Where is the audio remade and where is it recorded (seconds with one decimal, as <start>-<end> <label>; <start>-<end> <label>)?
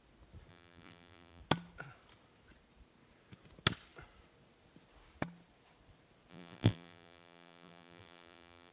0.0-0.5 recorded; 0.5-1.4 remade; 1.4-6.3 recorded; 6.3-8.7 remade